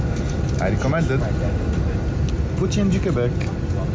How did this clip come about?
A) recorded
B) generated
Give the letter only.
A